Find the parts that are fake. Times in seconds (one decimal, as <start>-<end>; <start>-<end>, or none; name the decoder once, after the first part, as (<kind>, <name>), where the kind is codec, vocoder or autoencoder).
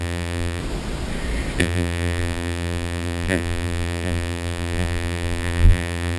0.0-0.6 (vocoder, BigVGAN v2); 1.6-6.2